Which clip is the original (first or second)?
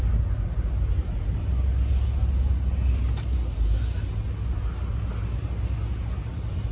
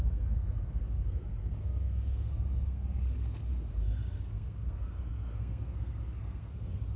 first